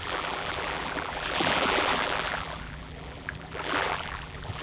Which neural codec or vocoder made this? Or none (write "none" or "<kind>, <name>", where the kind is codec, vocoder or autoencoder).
vocoder, BigVGAN v2